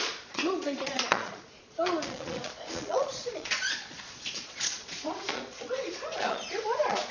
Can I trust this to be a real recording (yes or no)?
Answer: no